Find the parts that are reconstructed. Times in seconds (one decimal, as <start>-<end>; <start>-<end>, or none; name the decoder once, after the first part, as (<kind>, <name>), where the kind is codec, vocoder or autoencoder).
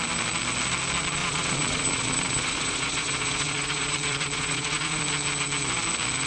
1.2-5.0 (vocoder, Vocos)